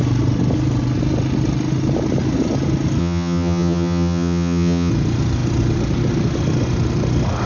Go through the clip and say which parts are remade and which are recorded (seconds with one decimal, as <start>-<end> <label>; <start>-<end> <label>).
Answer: 0.0-3.0 recorded; 3.0-4.9 remade; 4.9-7.5 recorded